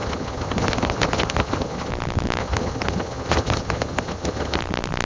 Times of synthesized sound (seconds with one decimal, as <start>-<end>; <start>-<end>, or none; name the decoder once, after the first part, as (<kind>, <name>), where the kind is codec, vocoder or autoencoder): 0.0-1.9 (vocoder, HiFi-GAN); 2.4-4.6